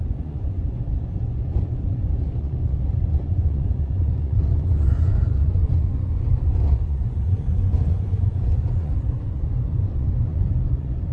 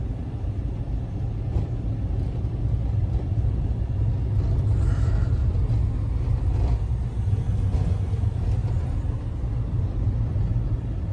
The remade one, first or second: first